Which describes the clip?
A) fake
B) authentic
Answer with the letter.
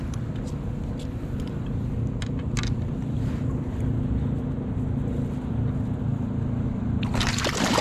B